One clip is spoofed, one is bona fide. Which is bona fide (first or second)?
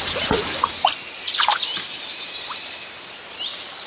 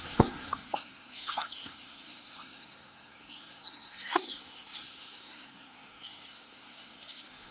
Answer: first